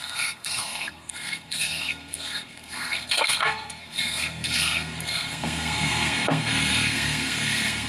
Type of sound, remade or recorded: remade